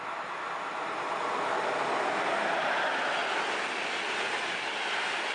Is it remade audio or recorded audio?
recorded